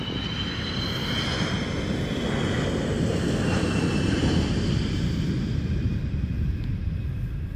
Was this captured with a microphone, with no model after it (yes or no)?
yes